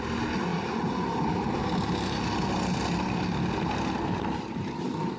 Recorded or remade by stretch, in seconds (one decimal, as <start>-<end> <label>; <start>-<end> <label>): 0.0-5.2 recorded